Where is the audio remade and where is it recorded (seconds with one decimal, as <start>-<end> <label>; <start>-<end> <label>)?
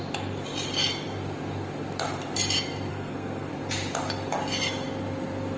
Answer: 0.0-2.9 recorded; 2.9-3.5 remade; 3.5-5.6 recorded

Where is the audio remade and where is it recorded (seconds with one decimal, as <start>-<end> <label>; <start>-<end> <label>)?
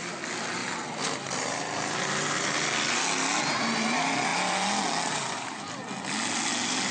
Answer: 0.0-6.9 recorded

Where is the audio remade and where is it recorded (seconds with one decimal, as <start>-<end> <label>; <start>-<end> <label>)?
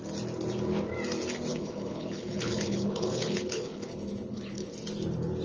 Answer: 0.0-1.5 recorded; 1.5-4.7 remade; 4.7-5.4 recorded